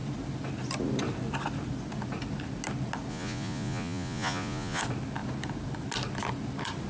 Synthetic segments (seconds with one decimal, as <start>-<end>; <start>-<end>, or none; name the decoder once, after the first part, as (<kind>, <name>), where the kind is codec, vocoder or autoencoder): 3.1-4.8 (vocoder, Vocos)